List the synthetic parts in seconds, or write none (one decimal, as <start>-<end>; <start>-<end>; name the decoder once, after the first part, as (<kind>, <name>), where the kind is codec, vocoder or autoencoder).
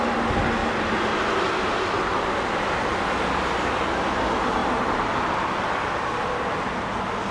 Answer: 0.6-1.4 (vocoder, BigVGAN v2); 4.6-5.5